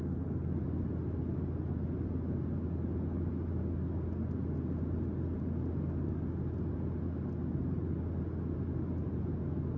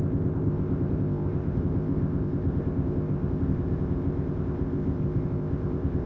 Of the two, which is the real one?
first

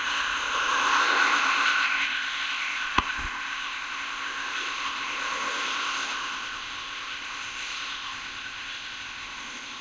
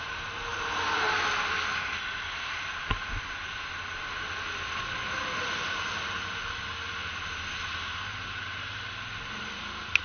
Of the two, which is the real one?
second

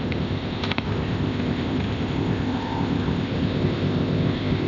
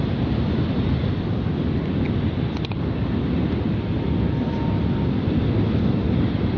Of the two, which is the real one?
second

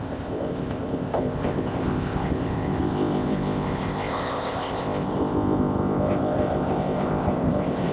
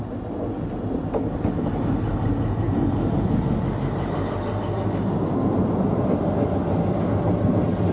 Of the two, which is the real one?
second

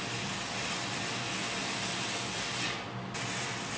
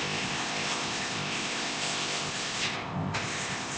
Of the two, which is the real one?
first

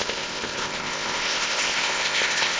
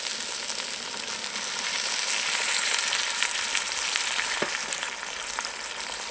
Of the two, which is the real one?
second